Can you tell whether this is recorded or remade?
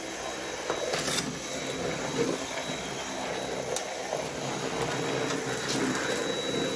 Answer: recorded